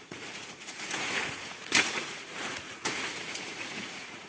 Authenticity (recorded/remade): remade